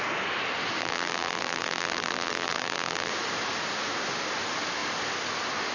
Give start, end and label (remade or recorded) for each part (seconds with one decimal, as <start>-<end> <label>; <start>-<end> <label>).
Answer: 0.0-0.8 recorded; 0.8-3.1 remade; 3.1-5.7 recorded